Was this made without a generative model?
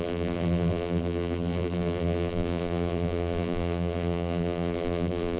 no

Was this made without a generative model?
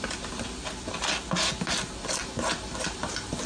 yes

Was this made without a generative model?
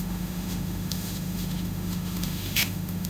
no